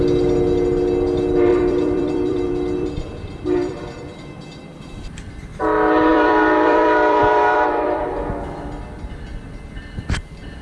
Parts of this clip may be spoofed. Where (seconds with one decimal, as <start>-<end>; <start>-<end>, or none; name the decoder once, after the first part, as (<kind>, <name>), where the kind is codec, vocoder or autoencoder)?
1.5-5.3 (vocoder, BigVGAN v2); 6.1-8.0